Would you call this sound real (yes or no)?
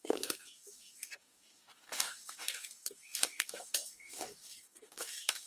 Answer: no